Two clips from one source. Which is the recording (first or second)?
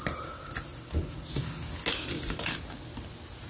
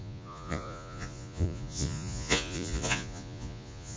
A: first